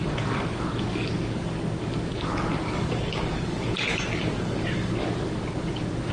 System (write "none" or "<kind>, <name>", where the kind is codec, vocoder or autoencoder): codec, DAC